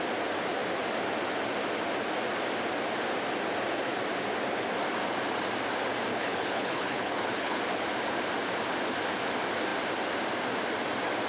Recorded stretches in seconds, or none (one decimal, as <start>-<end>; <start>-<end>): 0.0-6.1; 7.6-11.3